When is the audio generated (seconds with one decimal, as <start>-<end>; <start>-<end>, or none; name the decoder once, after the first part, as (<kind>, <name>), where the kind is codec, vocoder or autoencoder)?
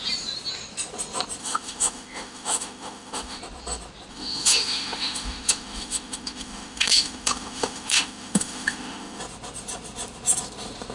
1.4-3.4 (autoencoder, DAC-VAE); 4.1-9.2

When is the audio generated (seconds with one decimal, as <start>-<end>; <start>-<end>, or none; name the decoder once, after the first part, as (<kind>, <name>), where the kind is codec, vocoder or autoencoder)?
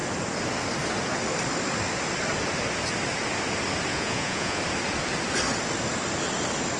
3.9-4.6 (vocoder, Vocos)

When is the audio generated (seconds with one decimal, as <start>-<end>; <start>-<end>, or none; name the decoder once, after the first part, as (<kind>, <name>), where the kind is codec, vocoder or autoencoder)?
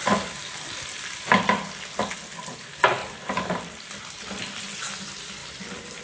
3.0-3.9 (vocoder, BigVGAN v2); 5.4-6.0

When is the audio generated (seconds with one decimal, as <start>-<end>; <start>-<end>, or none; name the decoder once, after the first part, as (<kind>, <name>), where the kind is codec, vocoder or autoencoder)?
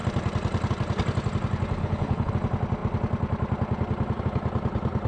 1.8-2.3 (codec, HILCodec)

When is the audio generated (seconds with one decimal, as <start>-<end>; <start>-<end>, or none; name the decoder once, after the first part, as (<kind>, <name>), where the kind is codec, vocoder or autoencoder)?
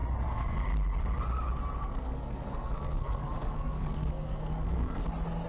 1.8-5.1 (codec, SNAC)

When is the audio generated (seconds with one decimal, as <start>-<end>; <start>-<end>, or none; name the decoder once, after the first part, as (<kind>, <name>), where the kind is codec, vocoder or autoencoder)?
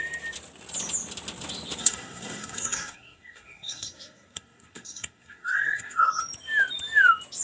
1.8-6.2 (codec, SNAC)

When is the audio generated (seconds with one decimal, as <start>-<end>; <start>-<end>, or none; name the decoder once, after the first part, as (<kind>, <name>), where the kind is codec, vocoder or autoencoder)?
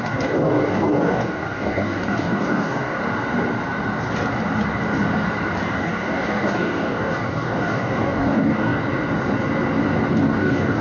0.0-3.0 (codec, DAC); 5.7-8.8; 10.1-10.8